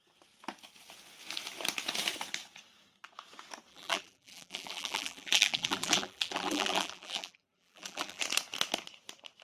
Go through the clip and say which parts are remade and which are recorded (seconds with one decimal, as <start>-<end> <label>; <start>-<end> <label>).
0.0-3.7 recorded; 3.7-8.2 remade; 8.2-9.4 recorded